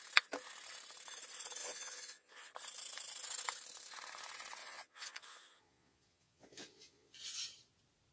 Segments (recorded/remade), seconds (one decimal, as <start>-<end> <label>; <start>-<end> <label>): 0.0-1.6 recorded; 1.6-2.5 remade; 2.5-4.6 recorded; 4.6-7.2 remade; 7.2-8.1 recorded

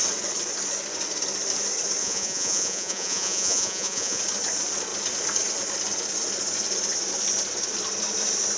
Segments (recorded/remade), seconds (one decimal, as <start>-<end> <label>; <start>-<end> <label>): 0.0-2.0 recorded; 2.0-4.2 remade; 4.2-8.6 recorded

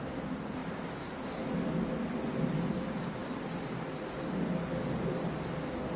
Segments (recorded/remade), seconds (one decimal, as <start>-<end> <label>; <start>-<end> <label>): 0.0-6.0 recorded

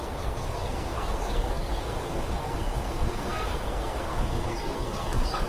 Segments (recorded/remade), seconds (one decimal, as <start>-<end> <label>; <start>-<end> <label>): 0.0-5.5 remade